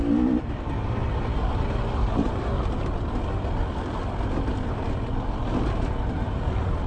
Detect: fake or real real